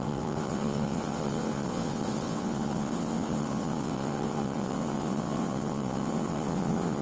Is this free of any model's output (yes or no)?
no